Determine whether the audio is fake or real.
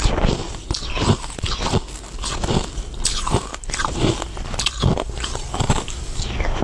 real